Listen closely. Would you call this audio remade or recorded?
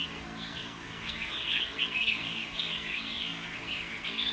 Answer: remade